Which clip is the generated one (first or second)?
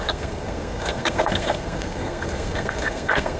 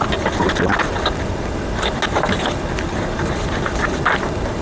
first